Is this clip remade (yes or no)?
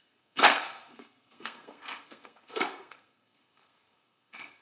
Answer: yes